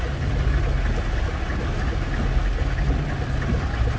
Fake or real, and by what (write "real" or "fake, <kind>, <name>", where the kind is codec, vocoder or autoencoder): real